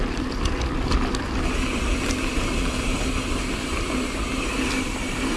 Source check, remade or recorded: recorded